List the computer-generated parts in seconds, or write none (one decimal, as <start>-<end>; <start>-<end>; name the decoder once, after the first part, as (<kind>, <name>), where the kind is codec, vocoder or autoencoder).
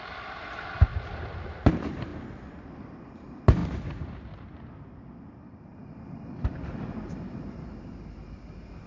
0.0-0.9 (vocoder, BigVGAN v2); 1.7-3.6; 5.6-8.9